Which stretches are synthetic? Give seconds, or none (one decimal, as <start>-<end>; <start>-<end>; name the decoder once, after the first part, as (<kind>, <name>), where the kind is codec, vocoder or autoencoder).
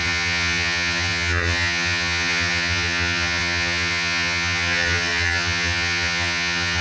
0.0-6.8 (vocoder, HiFi-GAN)